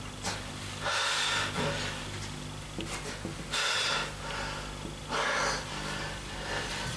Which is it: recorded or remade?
recorded